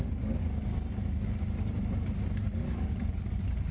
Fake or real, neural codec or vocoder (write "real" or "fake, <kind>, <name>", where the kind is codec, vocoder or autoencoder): fake, vocoder, BigVGAN v2